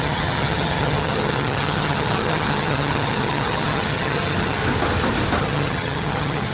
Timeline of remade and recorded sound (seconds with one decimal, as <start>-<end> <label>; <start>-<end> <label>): 0.0-4.6 remade; 4.6-5.4 recorded; 5.4-6.5 remade

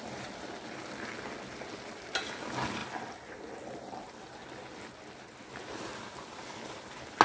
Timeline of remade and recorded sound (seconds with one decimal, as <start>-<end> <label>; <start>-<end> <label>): 0.0-7.2 recorded

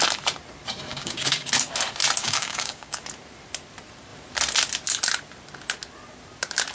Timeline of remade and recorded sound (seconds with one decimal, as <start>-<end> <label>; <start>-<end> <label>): 0.0-0.9 recorded; 0.9-1.5 remade; 1.5-2.2 recorded; 2.2-3.0 remade; 3.0-6.7 recorded

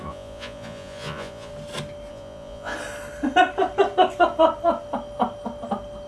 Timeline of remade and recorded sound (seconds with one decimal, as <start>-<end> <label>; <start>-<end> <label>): 0.0-1.5 remade; 1.5-2.1 recorded; 2.1-2.7 remade; 2.7-6.1 recorded

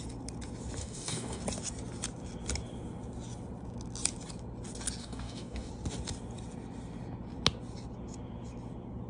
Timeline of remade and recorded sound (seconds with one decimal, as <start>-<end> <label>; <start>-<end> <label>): 0.0-0.8 recorded; 0.8-1.4 remade; 1.4-5.0 recorded; 5.0-5.7 remade; 5.7-9.1 recorded

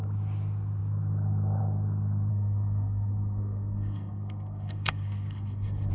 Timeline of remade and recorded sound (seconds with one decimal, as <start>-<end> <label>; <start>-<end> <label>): 0.0-2.3 recorded; 2.3-5.9 remade

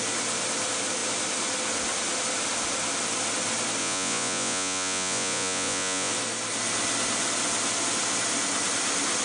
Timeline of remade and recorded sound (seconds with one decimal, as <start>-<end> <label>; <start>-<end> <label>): 0.0-3.8 recorded; 3.8-6.1 remade; 6.1-9.2 recorded

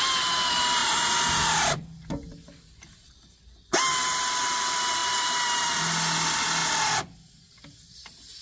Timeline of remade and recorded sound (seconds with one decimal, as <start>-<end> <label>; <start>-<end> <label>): 0.0-5.0 recorded; 5.0-5.8 remade; 5.8-8.4 recorded